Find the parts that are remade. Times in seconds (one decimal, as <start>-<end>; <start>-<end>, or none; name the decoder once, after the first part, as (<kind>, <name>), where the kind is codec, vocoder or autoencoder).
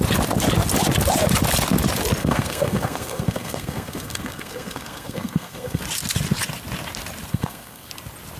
2.2-5.8 (codec, SNAC); 7.3-7.9